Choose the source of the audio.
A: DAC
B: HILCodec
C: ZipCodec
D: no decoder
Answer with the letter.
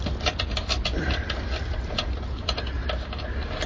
D